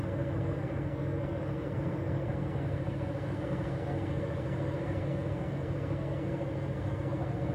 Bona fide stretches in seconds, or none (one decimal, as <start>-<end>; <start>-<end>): none